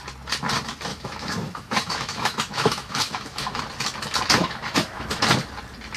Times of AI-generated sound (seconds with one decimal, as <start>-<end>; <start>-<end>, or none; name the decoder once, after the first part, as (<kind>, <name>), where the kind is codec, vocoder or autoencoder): 0.9-3.6 (autoencoder, DAC-VAE); 4.4-5.2